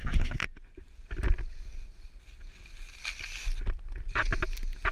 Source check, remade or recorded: recorded